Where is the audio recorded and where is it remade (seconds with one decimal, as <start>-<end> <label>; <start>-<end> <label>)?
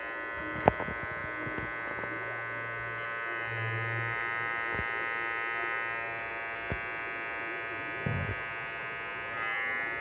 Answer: 0.0-10.0 recorded